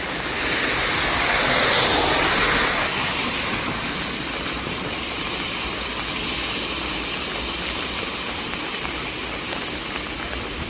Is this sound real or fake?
fake